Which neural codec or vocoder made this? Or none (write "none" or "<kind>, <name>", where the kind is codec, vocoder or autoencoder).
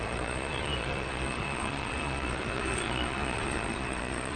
vocoder, Vocos